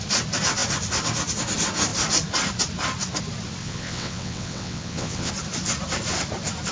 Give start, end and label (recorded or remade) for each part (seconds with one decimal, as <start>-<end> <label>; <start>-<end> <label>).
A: 0.0-3.6 recorded; 3.6-5.3 remade; 5.3-6.7 recorded